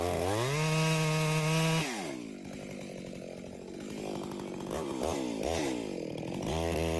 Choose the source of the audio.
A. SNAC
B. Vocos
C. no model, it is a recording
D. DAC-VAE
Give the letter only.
C